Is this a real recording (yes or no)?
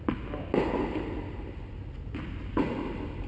yes